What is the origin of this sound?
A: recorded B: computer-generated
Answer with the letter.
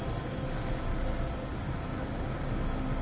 A